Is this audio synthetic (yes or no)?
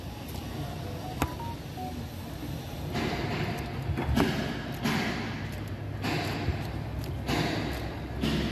no